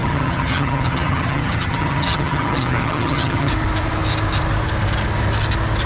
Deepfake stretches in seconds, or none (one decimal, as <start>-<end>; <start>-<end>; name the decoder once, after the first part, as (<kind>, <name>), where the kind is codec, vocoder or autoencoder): 0.0-3.5 (vocoder, HiFi-GAN)